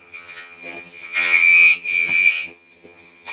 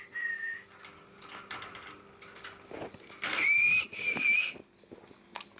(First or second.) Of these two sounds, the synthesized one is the first